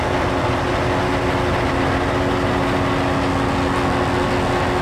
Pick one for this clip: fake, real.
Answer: real